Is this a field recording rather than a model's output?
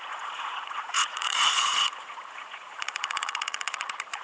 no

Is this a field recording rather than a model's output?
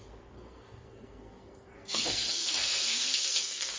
no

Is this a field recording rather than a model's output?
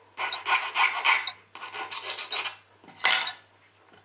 yes